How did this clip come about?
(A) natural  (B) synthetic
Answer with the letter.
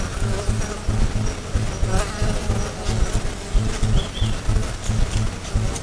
A